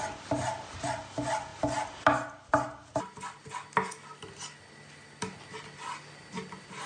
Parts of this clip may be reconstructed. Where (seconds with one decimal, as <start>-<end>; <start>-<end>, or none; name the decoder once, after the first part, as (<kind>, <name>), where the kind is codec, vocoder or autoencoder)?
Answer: none